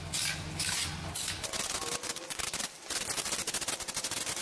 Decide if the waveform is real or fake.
real